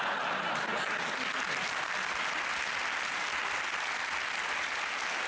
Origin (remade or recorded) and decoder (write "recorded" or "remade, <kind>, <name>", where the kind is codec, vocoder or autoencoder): recorded